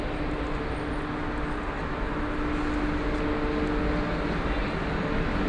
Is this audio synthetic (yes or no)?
no